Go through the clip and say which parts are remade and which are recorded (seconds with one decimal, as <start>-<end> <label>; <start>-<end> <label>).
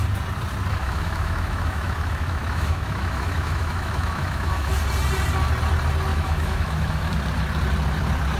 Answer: 0.0-0.7 recorded; 0.7-4.8 remade; 4.8-6.1 recorded; 6.1-7.1 remade; 7.1-8.4 recorded